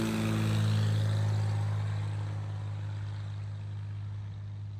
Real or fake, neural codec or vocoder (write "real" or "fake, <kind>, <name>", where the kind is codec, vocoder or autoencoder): real